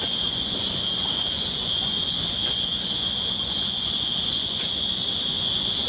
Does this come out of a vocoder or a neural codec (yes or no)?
yes